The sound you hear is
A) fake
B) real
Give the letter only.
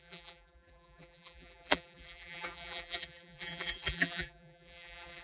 A